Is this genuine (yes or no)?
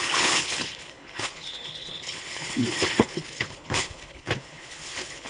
no